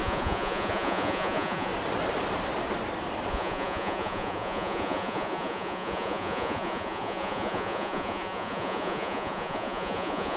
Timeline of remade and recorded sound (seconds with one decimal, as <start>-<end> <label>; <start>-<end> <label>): 0.0-1.7 remade; 1.7-3.3 recorded; 3.3-10.4 remade